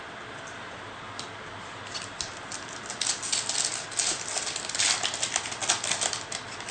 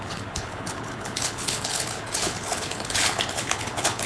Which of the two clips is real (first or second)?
first